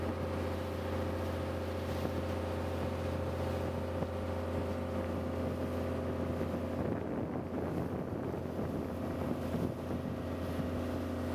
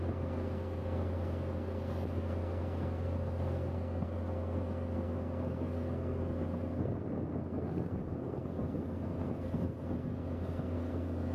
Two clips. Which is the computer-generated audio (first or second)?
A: second